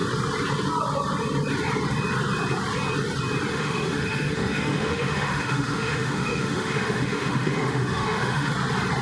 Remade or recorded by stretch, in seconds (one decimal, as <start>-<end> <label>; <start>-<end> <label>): 0.0-3.5 recorded; 3.5-8.5 remade; 8.5-9.0 recorded